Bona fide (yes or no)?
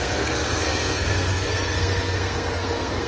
no